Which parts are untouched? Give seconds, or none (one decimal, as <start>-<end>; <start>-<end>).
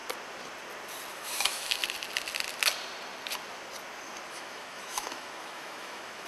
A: 0.0-1.1; 1.8-4.3